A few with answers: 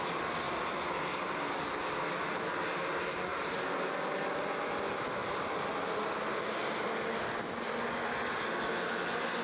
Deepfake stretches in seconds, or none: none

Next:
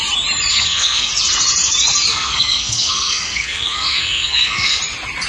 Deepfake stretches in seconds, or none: 0.5-1.1 (codec, SNAC); 2.1-4.8

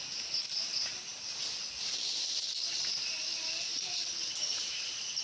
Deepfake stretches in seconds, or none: none

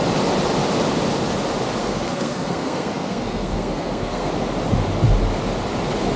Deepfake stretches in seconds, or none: 1.8-4.3 (codec, SNAC)